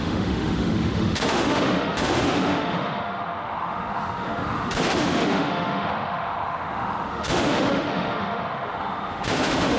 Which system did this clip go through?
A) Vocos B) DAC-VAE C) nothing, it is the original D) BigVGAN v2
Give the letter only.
B